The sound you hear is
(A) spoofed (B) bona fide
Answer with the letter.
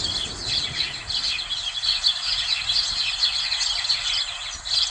B